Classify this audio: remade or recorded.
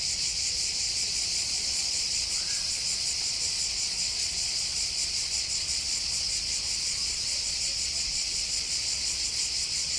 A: remade